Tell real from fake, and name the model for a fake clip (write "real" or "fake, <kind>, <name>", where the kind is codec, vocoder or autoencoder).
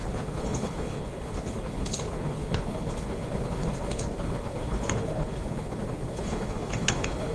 fake, codec, HILCodec